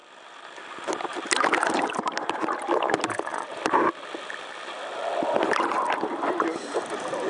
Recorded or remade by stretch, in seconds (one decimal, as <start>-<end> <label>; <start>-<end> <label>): 0.0-7.3 recorded